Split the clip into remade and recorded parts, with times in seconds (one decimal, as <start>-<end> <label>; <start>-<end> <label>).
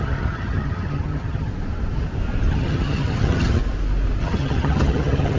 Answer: 0.0-1.5 remade; 1.5-2.5 recorded; 2.5-3.6 remade; 3.6-4.2 recorded; 4.2-5.4 remade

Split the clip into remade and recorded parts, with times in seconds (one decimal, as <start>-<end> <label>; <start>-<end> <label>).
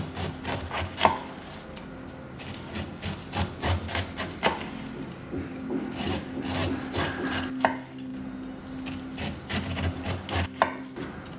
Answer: 0.0-11.4 recorded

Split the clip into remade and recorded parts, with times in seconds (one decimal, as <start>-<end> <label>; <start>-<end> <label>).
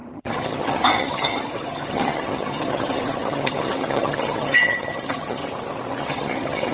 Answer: 0.0-5.4 remade; 5.4-6.0 recorded; 6.0-6.7 remade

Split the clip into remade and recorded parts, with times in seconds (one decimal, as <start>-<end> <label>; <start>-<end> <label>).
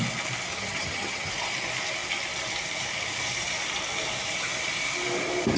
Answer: 0.0-0.5 recorded; 0.5-1.3 remade; 1.3-5.6 recorded